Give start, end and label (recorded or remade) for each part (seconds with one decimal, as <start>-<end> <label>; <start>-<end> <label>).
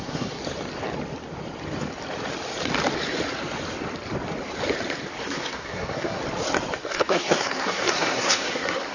0.0-0.4 remade; 0.4-5.2 recorded; 5.2-6.2 remade; 6.2-6.8 recorded; 6.8-8.9 remade